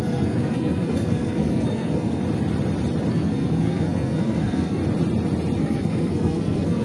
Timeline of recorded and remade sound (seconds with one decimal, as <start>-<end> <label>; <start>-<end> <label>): 0.0-2.2 remade; 2.2-3.1 recorded; 3.1-4.8 remade; 4.8-5.6 recorded; 5.6-6.8 remade